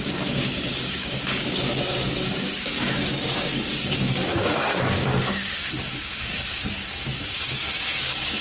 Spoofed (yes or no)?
yes